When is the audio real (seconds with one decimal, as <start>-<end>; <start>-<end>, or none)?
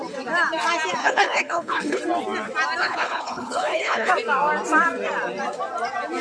0.0-1.0; 2.0-2.8; 4.1-6.2